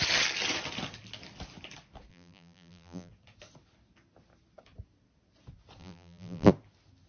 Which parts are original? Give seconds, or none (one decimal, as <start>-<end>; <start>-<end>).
0.0-2.1; 3.1-5.8; 6.5-7.1